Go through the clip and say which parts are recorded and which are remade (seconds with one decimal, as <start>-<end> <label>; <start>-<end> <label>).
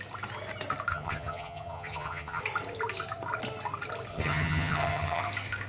0.0-0.9 recorded; 0.9-2.4 remade; 2.4-4.1 recorded; 4.1-5.2 remade; 5.2-5.7 recorded